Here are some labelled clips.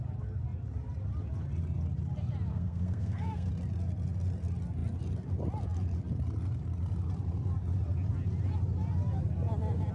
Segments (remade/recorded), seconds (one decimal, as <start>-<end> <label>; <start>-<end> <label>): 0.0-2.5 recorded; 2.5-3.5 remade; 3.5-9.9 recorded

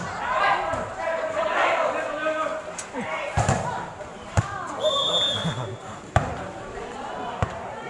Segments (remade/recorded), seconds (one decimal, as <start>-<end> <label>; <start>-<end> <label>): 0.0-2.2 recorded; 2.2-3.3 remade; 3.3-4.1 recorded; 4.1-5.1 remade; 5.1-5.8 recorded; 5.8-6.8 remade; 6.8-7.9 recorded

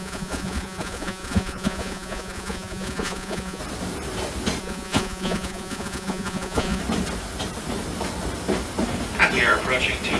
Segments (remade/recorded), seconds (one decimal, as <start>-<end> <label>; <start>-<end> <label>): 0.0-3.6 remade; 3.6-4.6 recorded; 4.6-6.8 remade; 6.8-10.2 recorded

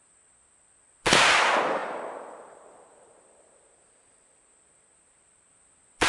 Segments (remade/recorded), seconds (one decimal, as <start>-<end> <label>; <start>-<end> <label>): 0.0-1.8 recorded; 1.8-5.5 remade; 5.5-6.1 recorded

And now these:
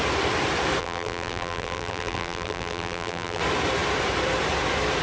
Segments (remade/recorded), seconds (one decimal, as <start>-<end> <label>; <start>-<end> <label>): 0.0-0.8 recorded; 0.8-3.4 remade; 3.4-5.0 recorded